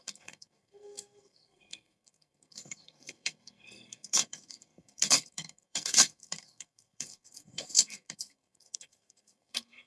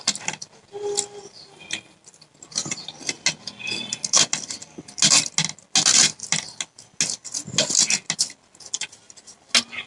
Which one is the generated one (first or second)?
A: first